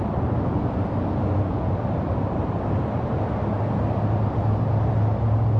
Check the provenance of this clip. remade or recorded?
recorded